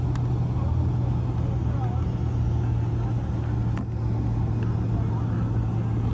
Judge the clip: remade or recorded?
recorded